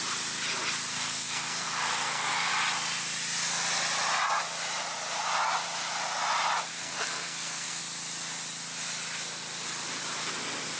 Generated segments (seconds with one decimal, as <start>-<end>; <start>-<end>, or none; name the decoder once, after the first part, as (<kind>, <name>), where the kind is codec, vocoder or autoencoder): 0.9-2.5 (codec, SNAC); 6.7-7.8